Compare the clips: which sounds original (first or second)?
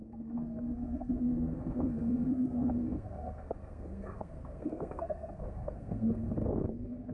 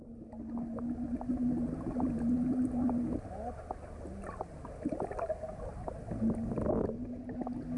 second